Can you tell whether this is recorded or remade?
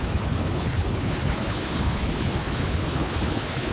remade